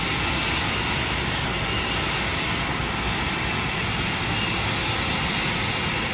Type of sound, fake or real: real